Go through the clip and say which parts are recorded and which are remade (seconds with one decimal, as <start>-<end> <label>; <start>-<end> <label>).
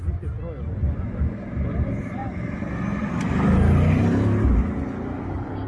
0.0-5.7 recorded